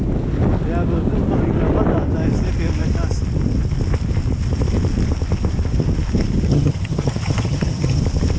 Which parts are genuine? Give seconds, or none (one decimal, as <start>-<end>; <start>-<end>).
0.0-6.5; 8.0-8.4